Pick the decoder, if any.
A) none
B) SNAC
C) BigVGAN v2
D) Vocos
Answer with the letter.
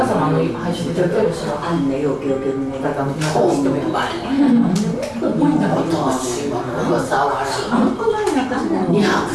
A